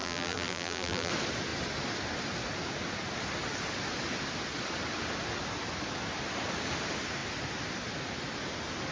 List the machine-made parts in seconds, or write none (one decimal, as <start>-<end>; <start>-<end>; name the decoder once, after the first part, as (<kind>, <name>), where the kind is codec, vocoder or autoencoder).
0.0-1.1 (vocoder, BigVGAN v2)